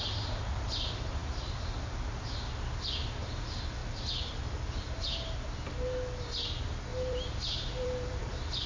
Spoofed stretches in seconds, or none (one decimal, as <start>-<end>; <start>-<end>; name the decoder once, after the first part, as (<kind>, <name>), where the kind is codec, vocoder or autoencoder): 6.9-8.2 (vocoder, BigVGAN v2)